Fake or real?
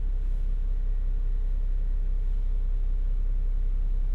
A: real